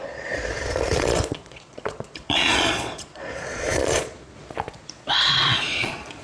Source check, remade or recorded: remade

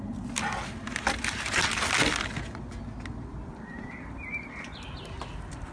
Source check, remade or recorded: recorded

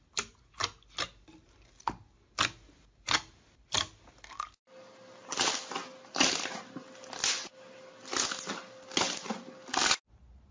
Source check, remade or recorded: recorded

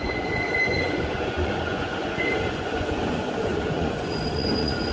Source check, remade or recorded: remade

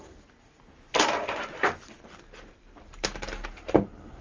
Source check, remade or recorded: recorded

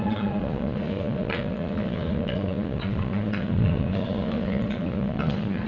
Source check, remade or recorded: remade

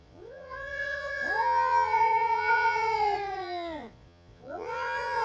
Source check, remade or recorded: remade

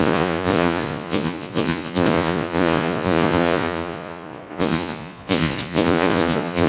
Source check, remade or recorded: remade